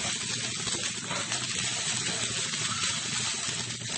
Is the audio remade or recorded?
recorded